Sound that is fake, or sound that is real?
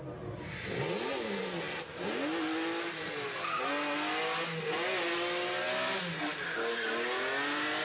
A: real